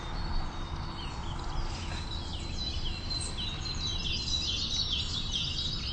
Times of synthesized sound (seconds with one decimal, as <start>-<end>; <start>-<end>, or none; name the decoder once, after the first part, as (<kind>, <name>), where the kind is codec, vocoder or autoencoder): none

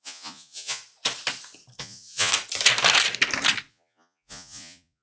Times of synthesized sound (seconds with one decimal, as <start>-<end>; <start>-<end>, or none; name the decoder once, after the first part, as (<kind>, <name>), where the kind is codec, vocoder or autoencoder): 0.0-0.8 (vocoder, Vocos); 1.8-2.3; 3.7-5.0

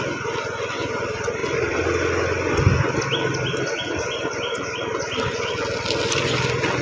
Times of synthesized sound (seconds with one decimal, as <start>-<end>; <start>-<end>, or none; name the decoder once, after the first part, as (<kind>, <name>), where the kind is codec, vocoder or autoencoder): none

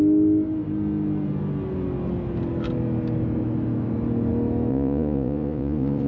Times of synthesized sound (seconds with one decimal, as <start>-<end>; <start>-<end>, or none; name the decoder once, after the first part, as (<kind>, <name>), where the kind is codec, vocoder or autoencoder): 4.7-6.1 (vocoder, Vocos)

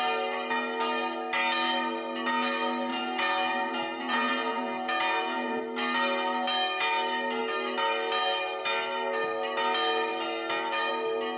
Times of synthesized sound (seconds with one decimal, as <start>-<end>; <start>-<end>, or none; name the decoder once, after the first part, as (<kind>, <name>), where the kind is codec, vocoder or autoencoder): 2.9-5.6 (vocoder, Vocos)

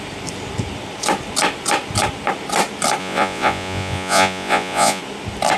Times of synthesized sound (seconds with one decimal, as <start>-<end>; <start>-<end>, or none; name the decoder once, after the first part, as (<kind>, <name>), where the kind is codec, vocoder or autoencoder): 3.0-5.0 (vocoder, Vocos)